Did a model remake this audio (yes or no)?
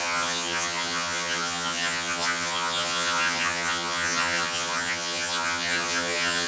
yes